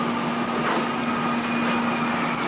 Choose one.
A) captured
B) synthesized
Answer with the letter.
A